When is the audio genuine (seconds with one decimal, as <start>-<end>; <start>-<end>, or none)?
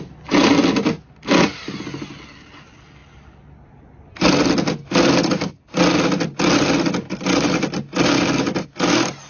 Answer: 0.0-9.3